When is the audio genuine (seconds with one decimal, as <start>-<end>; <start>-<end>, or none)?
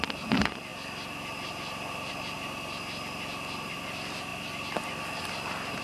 0.0-5.8